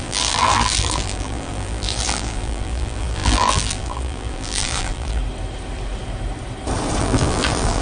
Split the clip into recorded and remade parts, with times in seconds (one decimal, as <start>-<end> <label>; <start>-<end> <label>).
0.0-5.2 remade; 5.2-7.0 recorded; 7.0-7.8 remade